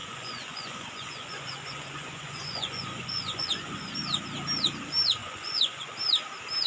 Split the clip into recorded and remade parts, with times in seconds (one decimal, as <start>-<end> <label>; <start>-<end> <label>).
0.0-4.0 remade; 4.0-5.2 recorded; 5.2-6.0 remade; 6.0-6.7 recorded